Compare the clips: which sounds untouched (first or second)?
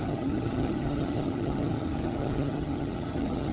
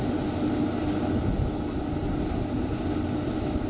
second